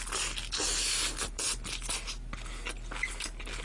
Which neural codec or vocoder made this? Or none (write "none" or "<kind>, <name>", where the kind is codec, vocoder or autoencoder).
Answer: none